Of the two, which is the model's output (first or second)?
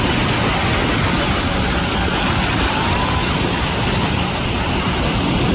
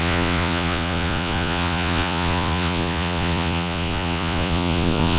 second